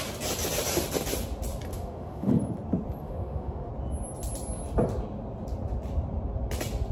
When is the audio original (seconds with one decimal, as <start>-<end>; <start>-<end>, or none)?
0.0-1.7; 2.4-3.0; 3.7-6.9